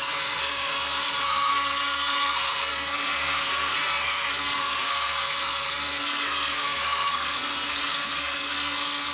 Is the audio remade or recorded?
remade